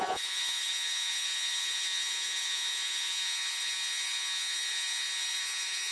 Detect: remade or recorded remade